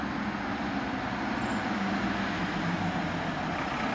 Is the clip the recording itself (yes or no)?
yes